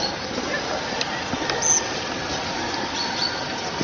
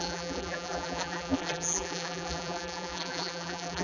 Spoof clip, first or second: second